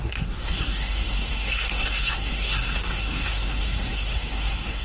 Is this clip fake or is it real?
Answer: fake